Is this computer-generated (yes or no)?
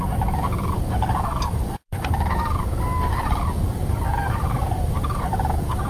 yes